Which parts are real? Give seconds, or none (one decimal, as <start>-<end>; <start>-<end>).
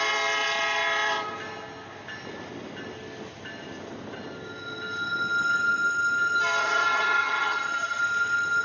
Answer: 0.0-6.6; 8.0-8.6